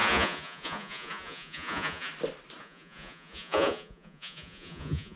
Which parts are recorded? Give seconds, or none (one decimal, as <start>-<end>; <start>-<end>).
2.1-2.6